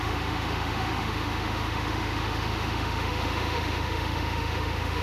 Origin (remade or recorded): remade